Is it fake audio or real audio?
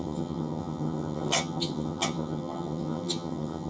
fake